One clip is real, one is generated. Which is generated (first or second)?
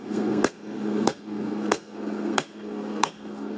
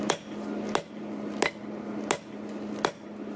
first